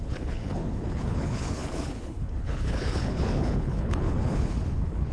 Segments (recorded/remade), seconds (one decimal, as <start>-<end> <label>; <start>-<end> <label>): 0.0-5.1 remade